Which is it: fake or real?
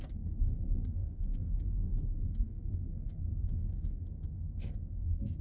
fake